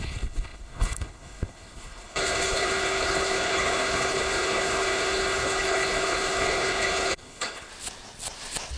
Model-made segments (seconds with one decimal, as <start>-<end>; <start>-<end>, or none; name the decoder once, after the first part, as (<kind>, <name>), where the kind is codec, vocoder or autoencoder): 0.0-7.7 (codec, HILCodec)